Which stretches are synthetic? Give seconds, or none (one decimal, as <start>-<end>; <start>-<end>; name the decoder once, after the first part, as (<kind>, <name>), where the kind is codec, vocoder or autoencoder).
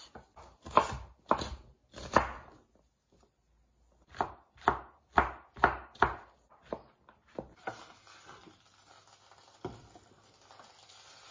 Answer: none